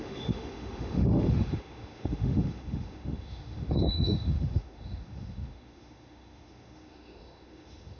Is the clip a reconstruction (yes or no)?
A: yes